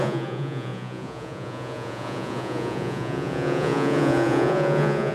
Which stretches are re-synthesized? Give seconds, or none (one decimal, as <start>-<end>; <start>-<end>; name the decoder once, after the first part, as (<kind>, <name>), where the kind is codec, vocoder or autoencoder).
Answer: 0.0-5.1 (vocoder, Vocos)

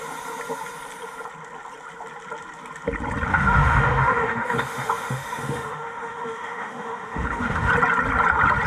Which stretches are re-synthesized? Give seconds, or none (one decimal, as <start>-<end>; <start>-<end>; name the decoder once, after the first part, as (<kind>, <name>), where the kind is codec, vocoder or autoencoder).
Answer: 3.3-7.7 (autoencoder, DAC-VAE)

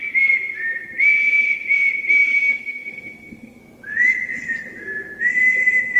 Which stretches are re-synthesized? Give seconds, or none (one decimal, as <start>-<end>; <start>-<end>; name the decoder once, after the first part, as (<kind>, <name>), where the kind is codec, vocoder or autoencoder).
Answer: 2.5-3.6 (codec, SNAC)

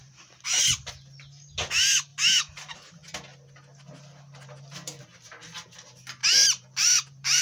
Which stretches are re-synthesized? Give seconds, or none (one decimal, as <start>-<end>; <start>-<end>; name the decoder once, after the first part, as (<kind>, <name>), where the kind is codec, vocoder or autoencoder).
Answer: 0.0-0.6 (vocoder, BigVGAN v2); 6.2-7.4